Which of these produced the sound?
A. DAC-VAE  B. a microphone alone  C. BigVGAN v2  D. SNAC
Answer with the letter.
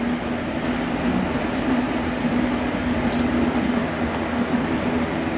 B